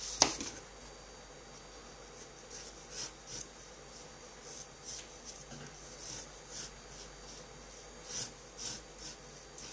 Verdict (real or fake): real